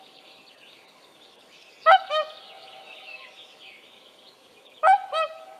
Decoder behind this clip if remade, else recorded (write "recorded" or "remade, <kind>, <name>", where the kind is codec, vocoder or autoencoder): remade, codec, DAC